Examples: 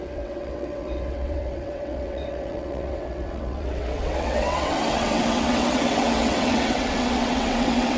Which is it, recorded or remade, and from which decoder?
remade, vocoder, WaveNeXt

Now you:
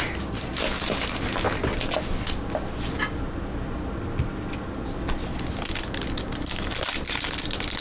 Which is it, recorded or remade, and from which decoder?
recorded